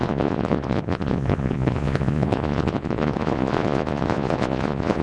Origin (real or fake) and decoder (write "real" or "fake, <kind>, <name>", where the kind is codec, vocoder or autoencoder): fake, vocoder, Vocos